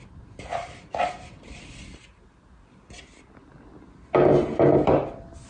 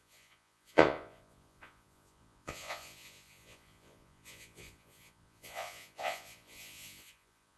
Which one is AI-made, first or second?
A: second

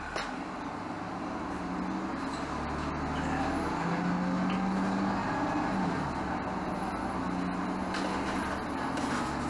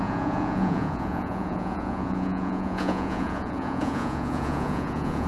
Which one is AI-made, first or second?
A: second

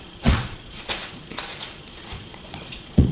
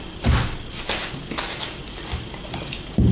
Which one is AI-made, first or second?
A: first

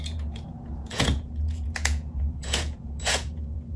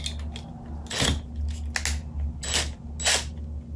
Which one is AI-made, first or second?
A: first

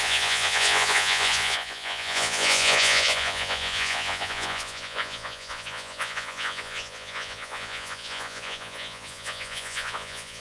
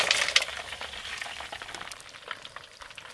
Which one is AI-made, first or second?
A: first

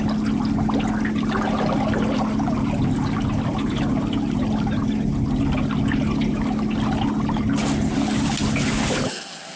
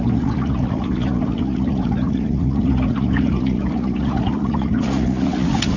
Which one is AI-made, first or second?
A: second